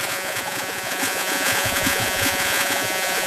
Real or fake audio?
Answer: fake